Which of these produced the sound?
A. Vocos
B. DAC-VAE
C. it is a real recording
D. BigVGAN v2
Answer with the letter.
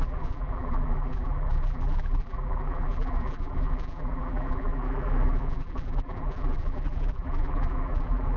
D